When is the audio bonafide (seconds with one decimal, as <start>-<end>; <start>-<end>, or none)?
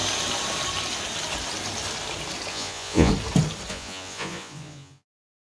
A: 0.0-2.5; 3.1-3.7